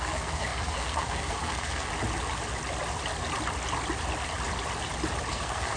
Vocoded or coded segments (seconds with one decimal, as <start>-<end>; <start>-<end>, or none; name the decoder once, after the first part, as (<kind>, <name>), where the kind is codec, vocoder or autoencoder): 0.0-1.9 (codec, SNAC); 5.3-5.8